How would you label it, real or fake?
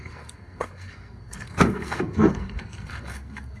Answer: fake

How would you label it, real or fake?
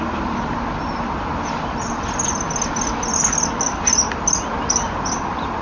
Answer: real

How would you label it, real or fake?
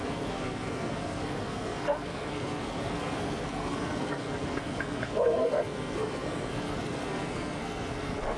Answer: fake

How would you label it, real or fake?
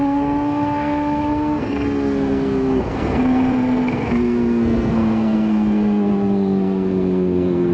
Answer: fake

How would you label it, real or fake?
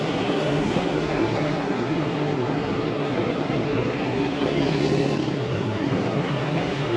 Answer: fake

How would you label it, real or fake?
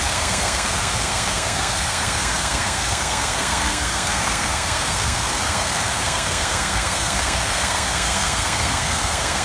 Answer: fake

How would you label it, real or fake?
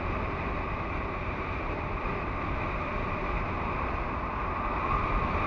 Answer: real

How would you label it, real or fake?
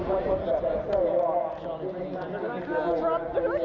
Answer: real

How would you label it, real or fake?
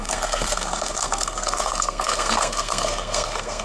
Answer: fake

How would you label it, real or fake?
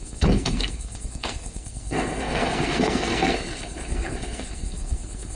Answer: fake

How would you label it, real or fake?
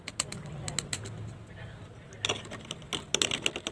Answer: real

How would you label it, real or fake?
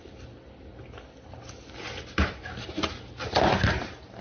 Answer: real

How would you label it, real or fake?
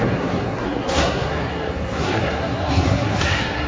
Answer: fake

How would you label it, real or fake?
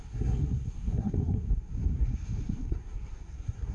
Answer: fake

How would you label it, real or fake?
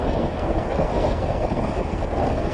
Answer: fake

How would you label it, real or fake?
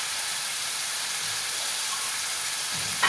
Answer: real